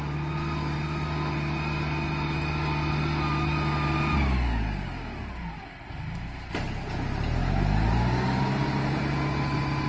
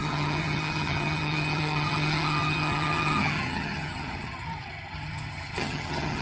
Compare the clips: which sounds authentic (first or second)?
first